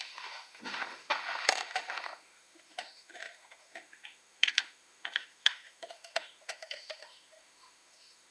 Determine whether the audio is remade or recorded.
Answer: remade